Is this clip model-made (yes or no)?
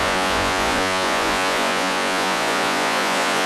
yes